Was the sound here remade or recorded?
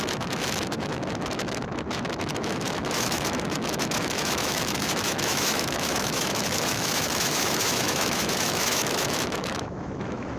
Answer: remade